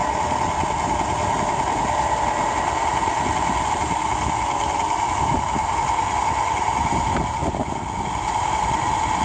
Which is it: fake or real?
real